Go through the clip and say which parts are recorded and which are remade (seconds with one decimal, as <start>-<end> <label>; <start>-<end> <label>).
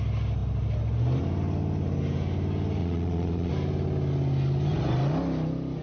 0.0-2.8 recorded; 2.8-3.5 remade; 3.5-5.8 recorded